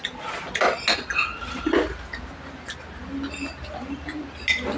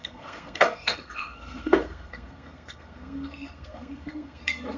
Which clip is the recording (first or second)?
first